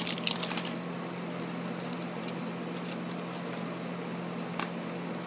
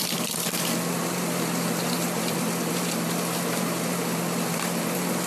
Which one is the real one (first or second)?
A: first